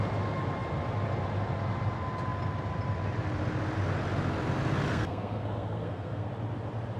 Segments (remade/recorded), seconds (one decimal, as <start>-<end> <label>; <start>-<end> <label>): 0.0-4.9 recorded; 4.9-6.3 remade; 6.3-7.0 recorded